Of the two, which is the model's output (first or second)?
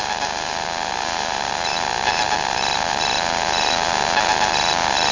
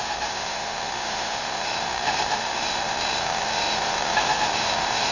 second